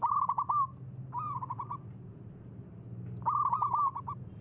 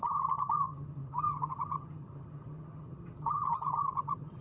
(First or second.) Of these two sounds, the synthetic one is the second